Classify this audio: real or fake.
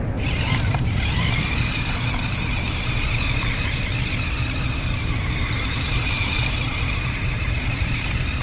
fake